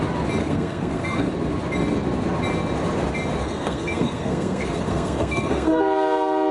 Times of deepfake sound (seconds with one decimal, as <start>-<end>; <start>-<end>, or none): 0.4-1.3; 3.4-5.8